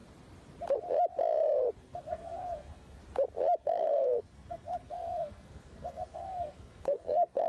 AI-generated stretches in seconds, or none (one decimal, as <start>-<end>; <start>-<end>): 1.8-3.0; 3.6-7.5